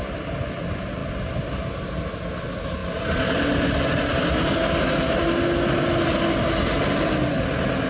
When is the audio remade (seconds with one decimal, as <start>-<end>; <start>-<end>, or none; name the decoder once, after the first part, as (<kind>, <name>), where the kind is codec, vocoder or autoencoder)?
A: none